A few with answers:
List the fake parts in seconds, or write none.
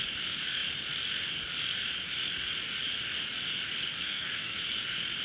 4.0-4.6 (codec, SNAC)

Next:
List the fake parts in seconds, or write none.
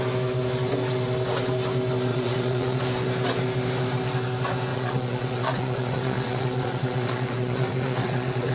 2.1-2.8 (vocoder, WaveNeXt); 4.7-8.5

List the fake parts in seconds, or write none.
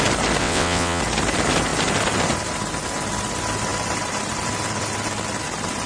0.4-1.0 (vocoder, WaveNeXt)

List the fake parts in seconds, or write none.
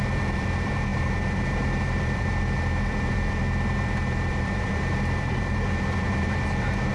0.0-6.9 (vocoder, BigVGAN v2)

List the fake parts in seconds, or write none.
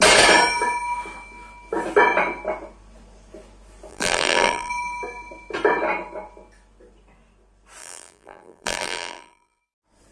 3.9-4.7 (vocoder, BigVGAN v2); 7.8-9.6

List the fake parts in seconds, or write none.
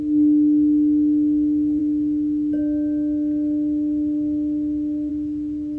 none